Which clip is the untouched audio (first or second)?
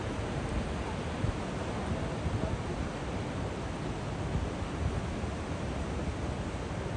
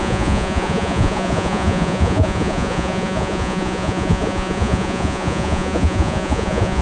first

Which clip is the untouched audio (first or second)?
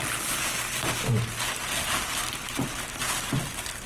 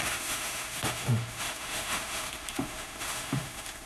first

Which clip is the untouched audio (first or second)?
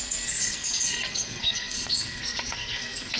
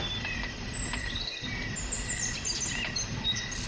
second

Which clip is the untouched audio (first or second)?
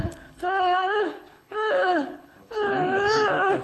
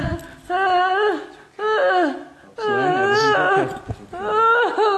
second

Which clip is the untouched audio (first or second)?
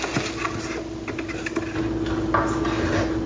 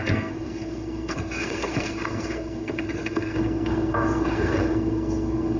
first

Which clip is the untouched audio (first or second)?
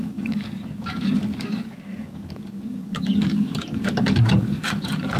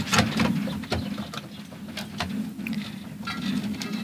second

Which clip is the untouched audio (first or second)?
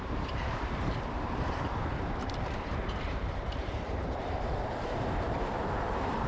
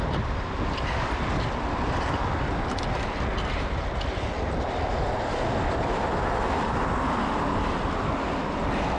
second